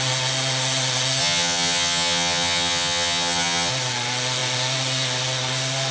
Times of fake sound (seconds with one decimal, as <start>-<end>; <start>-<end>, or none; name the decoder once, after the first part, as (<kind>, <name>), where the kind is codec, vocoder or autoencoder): 1.2-3.7 (vocoder, HiFi-GAN)